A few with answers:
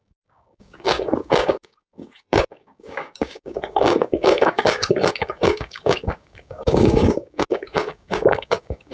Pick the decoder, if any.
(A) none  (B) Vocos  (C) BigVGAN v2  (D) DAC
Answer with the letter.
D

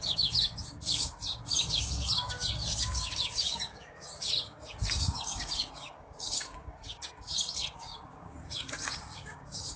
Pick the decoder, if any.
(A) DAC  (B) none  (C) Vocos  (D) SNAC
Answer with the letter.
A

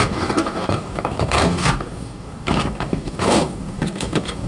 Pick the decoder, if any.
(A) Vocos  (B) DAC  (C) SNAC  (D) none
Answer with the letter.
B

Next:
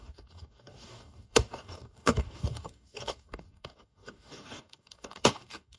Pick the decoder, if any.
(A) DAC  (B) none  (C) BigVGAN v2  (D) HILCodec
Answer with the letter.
A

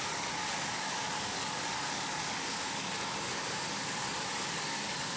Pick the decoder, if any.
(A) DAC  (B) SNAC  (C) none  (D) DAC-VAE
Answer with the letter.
A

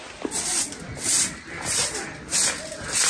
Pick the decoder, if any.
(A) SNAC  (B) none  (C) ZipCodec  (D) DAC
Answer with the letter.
B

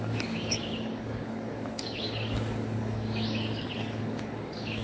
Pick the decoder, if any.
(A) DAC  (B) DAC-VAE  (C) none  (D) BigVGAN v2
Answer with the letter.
A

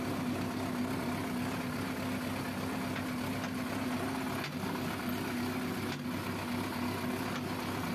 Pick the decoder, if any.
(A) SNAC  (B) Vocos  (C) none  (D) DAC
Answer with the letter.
C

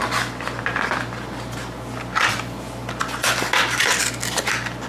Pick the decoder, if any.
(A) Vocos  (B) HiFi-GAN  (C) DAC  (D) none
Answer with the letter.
D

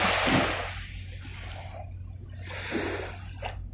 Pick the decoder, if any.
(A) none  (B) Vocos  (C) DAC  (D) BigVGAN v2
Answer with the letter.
A